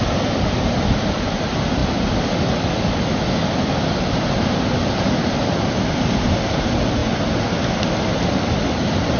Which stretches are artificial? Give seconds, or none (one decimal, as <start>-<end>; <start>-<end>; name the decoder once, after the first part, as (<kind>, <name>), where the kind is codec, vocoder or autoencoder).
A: none